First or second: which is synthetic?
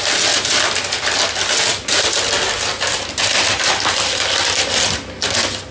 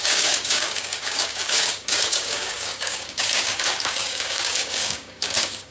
second